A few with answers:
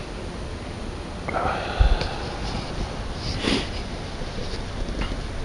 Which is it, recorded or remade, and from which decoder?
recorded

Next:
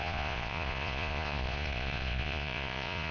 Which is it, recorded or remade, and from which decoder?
remade, vocoder, Vocos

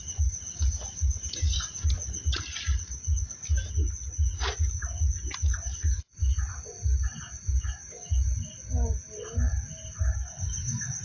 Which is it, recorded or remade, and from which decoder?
recorded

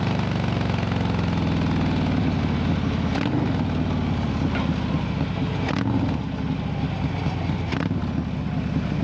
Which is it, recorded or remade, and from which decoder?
recorded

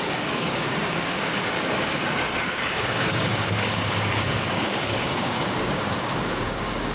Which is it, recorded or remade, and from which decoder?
remade, codec, DAC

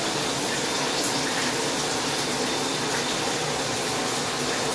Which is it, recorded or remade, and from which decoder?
recorded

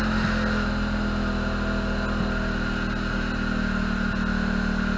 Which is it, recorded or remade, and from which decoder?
recorded